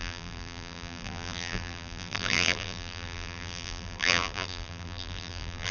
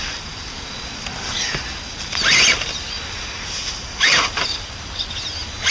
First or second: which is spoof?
first